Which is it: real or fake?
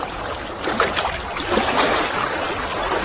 fake